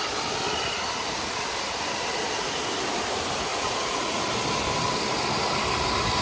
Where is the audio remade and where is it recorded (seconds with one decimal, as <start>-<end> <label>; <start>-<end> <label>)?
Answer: 0.0-3.5 recorded; 3.5-4.2 remade; 4.2-6.2 recorded